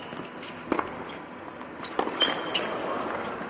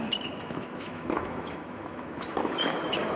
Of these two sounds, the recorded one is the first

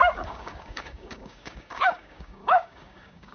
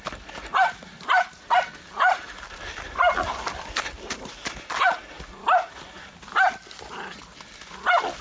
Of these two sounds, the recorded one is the second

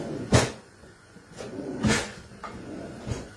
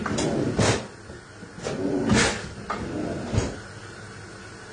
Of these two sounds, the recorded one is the second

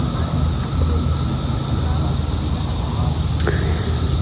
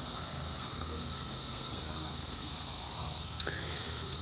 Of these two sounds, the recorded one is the first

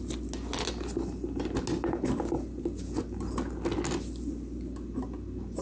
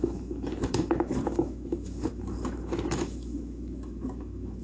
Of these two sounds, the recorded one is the first